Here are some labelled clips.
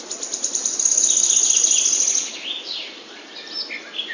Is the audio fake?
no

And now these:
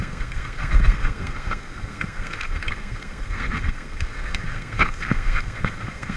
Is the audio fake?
yes